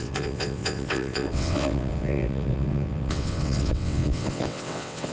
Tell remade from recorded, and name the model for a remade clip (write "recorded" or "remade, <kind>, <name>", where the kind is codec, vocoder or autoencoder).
remade, vocoder, WaveNeXt